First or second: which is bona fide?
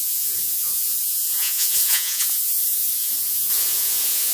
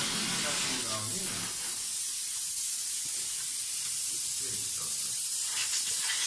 second